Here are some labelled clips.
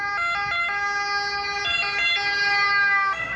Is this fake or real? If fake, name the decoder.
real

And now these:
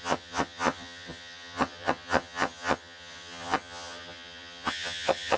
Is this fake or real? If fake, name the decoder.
fake, vocoder, HiFi-GAN